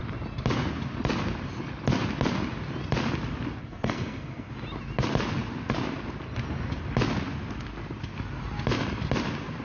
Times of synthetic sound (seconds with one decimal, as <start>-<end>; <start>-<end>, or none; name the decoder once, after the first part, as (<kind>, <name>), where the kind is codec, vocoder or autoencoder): 3.6-4.5 (codec, SNAC)